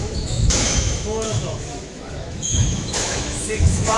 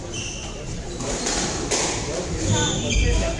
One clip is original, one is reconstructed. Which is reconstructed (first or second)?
first